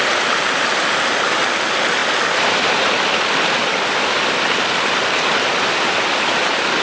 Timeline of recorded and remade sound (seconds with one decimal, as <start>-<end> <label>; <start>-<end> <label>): 0.0-6.8 recorded